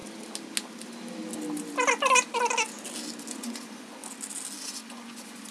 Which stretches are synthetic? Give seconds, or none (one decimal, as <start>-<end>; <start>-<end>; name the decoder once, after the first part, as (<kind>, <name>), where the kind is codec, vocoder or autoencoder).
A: 3.3-4.0 (vocoder, Vocos); 4.6-5.5